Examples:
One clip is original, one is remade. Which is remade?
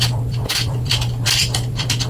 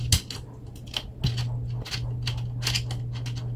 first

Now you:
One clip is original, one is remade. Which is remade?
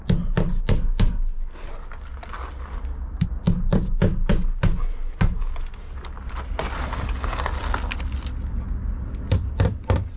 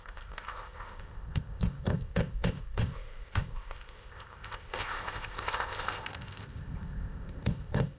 second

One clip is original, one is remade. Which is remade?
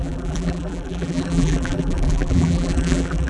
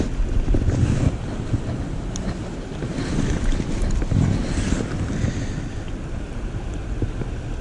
first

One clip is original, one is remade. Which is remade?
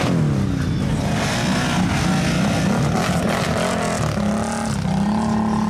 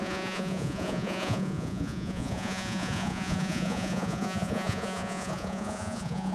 second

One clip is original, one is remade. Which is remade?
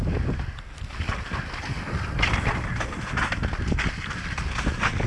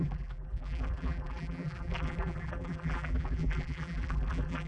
second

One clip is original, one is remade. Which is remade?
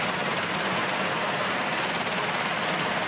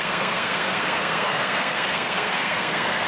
second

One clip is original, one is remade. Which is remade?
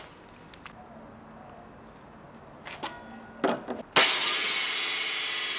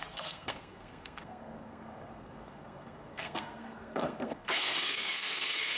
second